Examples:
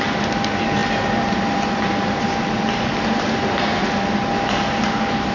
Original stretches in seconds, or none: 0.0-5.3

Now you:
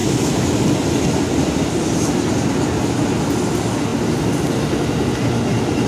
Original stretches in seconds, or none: 0.0-5.9

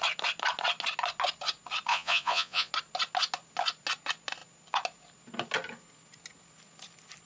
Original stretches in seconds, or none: 0.0-1.9; 2.7-7.3

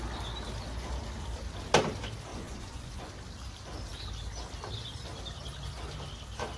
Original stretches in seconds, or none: 0.0-2.3; 3.1-6.6

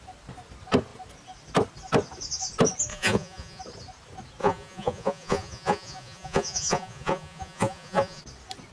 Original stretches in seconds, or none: 0.0-2.9; 3.6-4.4; 8.2-8.7

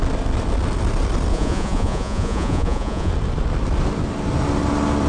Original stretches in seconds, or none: 0.0-1.3; 3.1-5.1

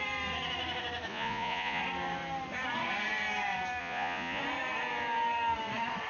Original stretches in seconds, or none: 0.0-1.1; 1.8-3.8; 4.4-6.1

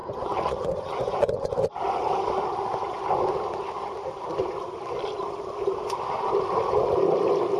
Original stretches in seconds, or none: 1.5-7.6